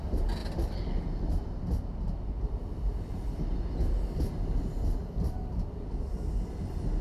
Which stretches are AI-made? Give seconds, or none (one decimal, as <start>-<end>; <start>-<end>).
none